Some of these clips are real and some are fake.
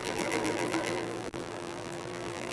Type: fake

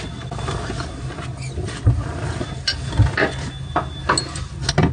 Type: real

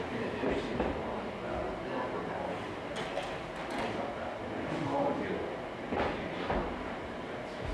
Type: real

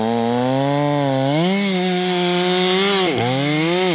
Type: real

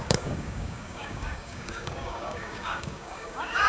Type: fake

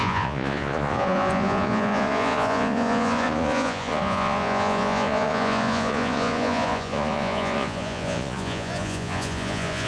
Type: fake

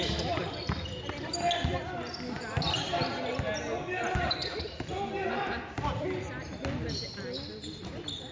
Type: real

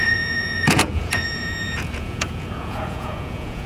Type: fake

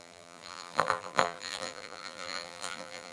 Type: fake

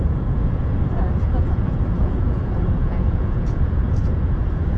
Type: fake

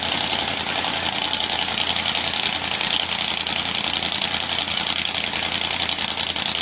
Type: real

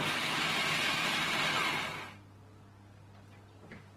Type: real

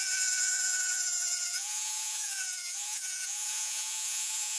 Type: fake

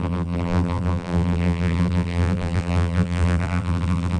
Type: fake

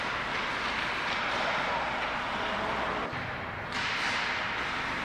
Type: real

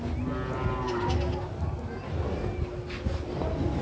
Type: real